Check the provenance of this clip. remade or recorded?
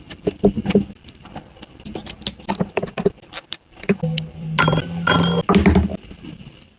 recorded